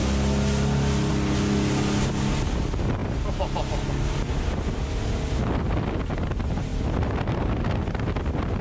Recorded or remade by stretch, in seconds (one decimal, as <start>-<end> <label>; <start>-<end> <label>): 0.0-8.6 recorded